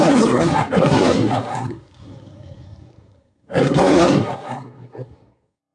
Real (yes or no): no